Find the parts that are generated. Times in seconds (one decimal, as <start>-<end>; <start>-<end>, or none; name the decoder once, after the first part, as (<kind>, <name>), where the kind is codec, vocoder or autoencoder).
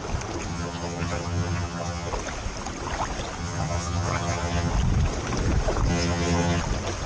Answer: 0.5-2.1 (vocoder, HiFi-GAN); 3.4-4.7; 5.9-6.6